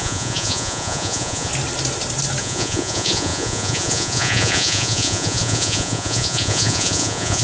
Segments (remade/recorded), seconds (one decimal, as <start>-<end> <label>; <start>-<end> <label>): 0.0-1.5 remade; 1.5-2.4 recorded; 2.4-7.4 remade